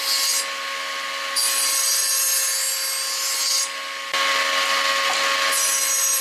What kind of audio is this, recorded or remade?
recorded